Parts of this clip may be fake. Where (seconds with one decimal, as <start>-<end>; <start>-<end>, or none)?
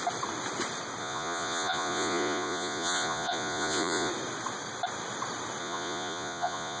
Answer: 1.0-4.1; 5.6-6.8